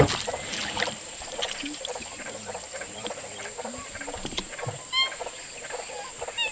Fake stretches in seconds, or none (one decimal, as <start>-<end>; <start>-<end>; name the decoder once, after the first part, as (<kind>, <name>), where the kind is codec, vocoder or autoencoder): 0.5-4.4 (vocoder, BigVGAN v2)